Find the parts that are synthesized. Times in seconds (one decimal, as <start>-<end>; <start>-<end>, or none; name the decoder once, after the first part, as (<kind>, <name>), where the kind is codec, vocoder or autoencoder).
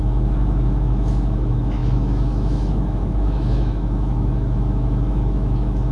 0.0-5.9 (autoencoder, DAC-VAE)